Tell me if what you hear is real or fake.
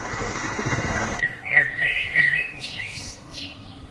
fake